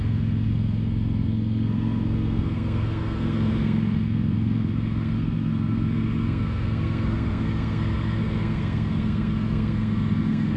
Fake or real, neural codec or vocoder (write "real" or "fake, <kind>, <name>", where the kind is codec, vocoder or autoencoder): fake, codec, SNAC